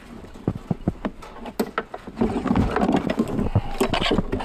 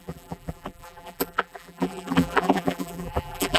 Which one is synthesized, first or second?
second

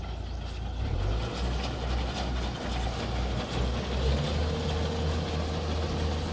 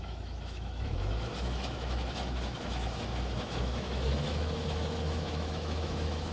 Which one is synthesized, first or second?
second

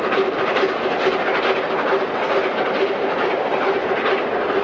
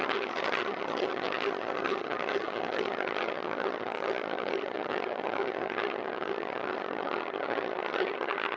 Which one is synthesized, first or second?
second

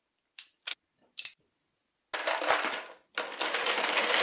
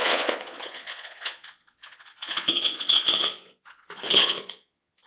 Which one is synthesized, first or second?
second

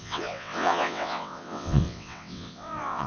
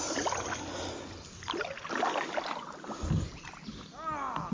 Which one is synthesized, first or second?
first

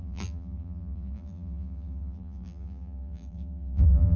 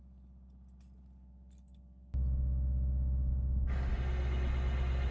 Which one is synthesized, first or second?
first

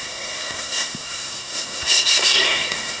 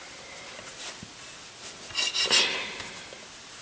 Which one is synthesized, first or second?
first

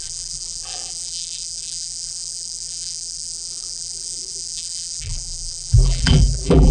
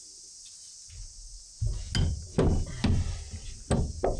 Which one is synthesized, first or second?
first